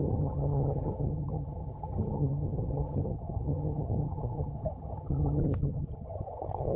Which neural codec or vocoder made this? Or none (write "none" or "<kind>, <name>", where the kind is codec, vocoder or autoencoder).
vocoder, HiFi-GAN